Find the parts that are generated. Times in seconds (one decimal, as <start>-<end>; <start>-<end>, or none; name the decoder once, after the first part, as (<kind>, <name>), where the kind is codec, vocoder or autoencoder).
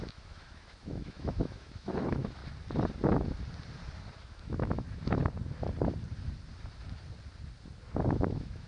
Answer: 0.0-2.4 (autoencoder, DAC-VAE); 4.2-5.2; 8.1-8.7